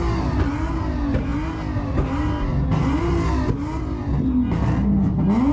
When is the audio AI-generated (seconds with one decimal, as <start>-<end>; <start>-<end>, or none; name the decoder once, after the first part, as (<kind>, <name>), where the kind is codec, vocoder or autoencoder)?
none